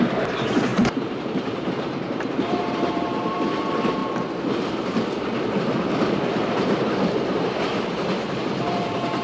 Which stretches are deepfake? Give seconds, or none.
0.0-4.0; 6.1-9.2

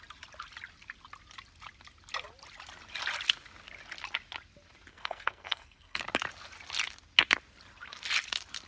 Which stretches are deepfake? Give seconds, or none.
4.9-6.0

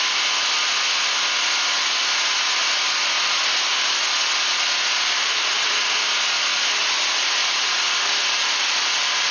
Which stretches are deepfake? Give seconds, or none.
7.4-8.0

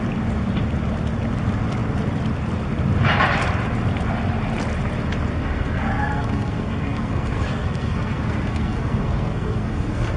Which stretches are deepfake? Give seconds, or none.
5.3-10.2

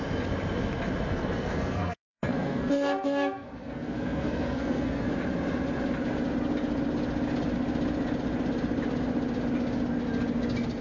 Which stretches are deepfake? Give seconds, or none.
1.1-5.1

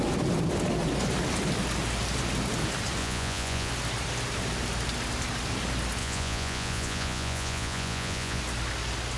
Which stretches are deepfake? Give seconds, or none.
3.0-3.7; 6.0-8.4

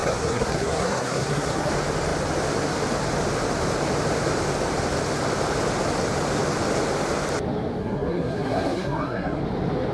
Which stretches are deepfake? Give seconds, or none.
0.0-1.7; 7.8-9.4